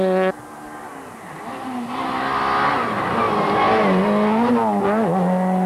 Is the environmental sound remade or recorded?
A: recorded